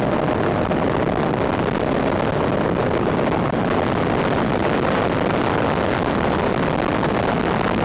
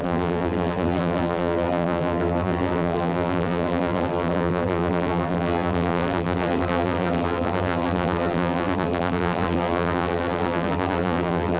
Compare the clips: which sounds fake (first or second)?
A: second